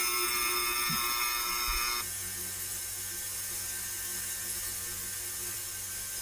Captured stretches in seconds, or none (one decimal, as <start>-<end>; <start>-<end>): 0.0-6.2